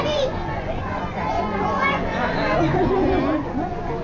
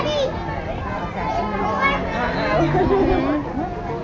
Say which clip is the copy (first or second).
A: first